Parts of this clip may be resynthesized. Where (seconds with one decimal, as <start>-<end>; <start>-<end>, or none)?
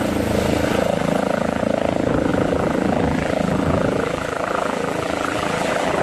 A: 1.0-1.6; 2.3-6.0